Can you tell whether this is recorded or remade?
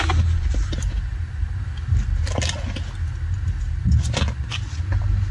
recorded